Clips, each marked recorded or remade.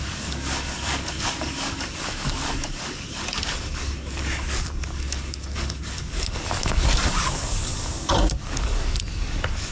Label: remade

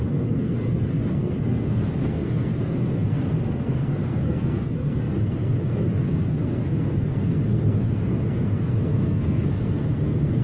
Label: remade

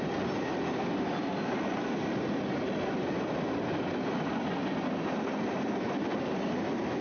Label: recorded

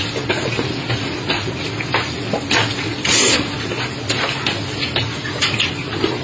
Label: recorded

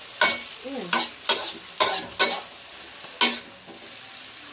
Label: recorded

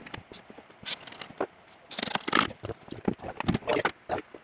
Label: recorded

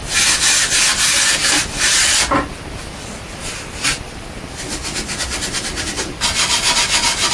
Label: recorded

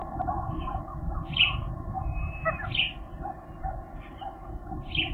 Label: recorded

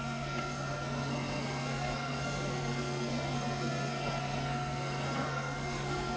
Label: remade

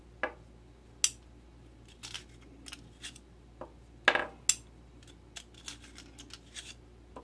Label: recorded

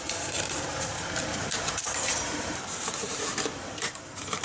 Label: remade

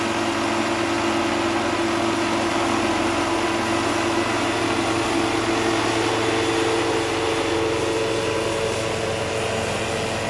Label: recorded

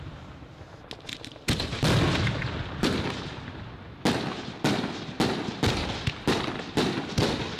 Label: recorded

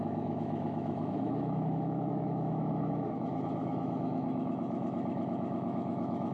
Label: remade